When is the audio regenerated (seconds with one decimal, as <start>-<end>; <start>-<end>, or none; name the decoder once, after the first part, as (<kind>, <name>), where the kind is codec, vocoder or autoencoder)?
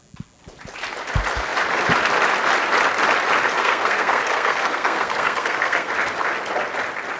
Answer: 3.6-5.9 (codec, SNAC)